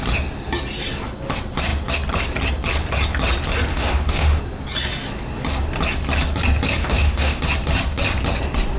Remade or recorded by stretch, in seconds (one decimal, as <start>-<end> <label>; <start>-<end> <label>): 0.0-3.7 recorded; 3.7-4.4 remade; 4.4-6.8 recorded; 6.8-7.4 remade; 7.4-8.8 recorded